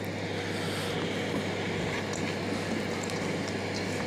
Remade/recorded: recorded